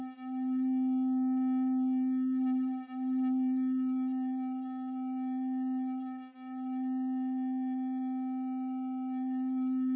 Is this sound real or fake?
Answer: fake